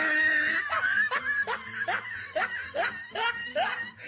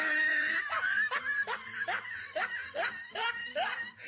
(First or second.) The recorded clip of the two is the first